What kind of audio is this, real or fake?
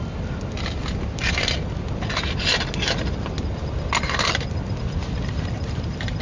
real